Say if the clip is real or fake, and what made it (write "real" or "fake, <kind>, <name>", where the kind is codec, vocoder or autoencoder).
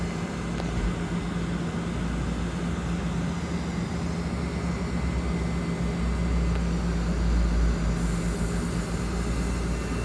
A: real